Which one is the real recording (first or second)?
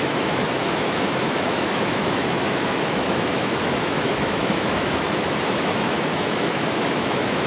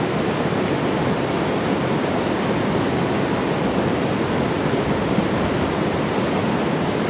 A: second